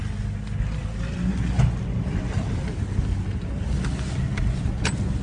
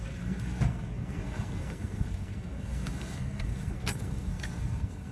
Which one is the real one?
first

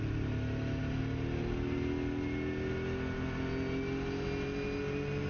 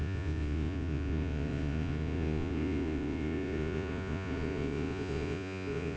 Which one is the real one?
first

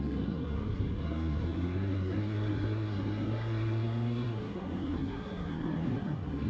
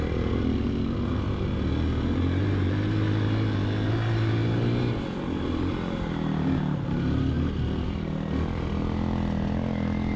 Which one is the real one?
second